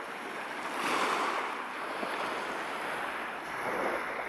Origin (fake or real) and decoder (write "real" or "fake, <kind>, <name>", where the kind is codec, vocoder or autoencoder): real